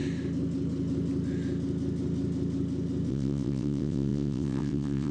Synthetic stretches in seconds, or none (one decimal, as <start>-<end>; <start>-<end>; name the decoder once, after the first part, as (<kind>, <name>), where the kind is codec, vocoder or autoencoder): 3.1-5.1 (vocoder, WaveNeXt)